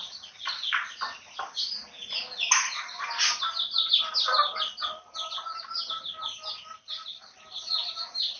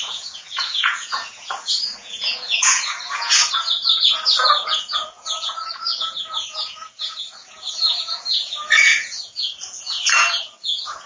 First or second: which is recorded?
first